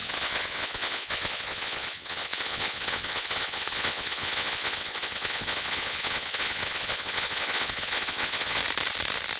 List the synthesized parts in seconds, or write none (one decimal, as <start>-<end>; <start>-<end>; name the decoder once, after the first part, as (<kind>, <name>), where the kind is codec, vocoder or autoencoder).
0.0-8.6 (vocoder, WaveNeXt)